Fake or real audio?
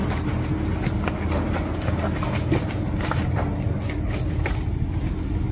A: real